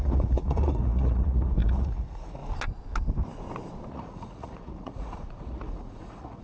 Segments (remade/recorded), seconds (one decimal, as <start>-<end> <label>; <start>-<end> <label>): 0.0-2.4 remade; 2.4-3.9 recorded; 3.9-6.4 remade